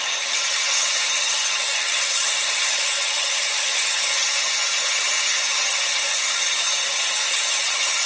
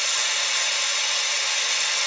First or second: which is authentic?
second